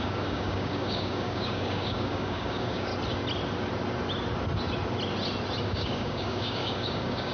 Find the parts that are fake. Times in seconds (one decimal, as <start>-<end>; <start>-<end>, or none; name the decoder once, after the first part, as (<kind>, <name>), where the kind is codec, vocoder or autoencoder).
0.0-2.9 (codec, DAC); 5.6-7.3